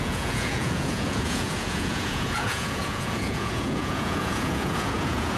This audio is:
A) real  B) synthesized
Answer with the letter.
B